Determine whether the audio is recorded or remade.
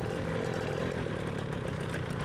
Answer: recorded